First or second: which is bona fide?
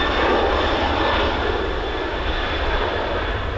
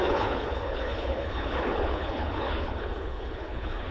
first